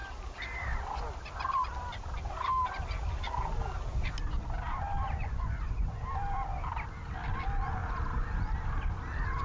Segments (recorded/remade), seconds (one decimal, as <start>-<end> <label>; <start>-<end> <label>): 0.0-5.2 recorded; 5.2-6.0 remade; 6.0-9.4 recorded